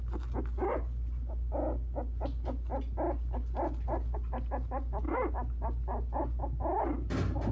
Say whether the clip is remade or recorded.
recorded